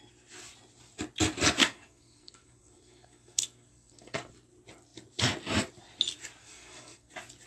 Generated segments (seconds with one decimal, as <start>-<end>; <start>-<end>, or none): 1.6-4.3; 6.4-7.1